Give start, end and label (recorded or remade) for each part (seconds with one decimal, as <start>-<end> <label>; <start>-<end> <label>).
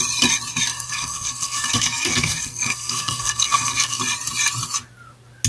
0.0-0.7 recorded; 0.7-4.0 remade; 4.0-5.5 recorded